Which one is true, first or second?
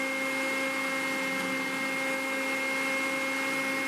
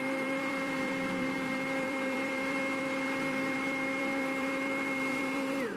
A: first